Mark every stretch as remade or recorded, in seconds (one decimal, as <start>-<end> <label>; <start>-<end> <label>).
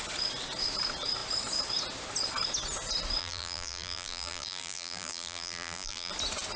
0.0-3.2 recorded; 3.2-6.1 remade; 6.1-6.6 recorded